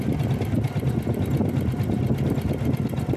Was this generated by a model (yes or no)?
no